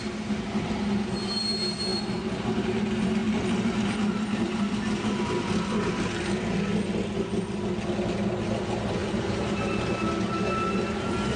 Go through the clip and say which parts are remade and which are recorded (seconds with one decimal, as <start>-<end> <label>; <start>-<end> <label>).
0.0-9.0 recorded; 9.0-9.9 remade; 9.9-11.4 recorded